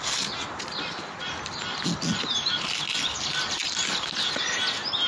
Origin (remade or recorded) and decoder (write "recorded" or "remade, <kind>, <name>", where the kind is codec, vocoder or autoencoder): recorded